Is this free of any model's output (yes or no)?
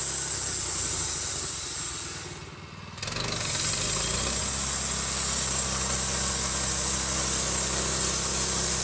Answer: yes